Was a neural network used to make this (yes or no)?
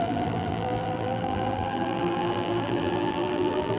yes